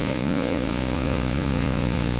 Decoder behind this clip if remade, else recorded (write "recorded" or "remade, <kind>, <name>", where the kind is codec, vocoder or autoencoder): remade, vocoder, Vocos